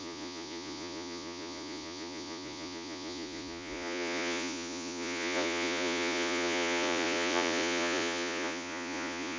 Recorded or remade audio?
remade